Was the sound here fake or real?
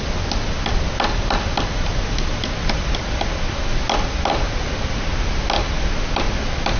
real